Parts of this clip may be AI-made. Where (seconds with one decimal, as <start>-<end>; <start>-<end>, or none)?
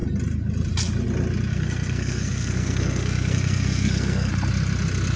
1.5-4.3